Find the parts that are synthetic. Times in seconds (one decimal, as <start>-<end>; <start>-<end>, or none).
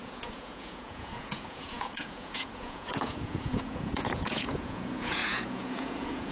0.0-6.3